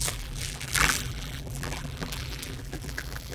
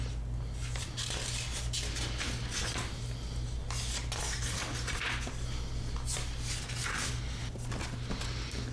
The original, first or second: second